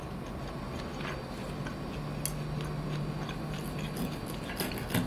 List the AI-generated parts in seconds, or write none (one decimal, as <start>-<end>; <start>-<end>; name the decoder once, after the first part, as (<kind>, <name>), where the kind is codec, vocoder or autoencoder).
none